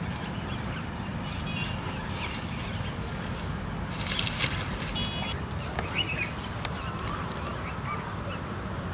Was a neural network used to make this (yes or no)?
no